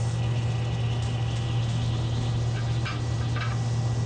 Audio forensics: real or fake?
real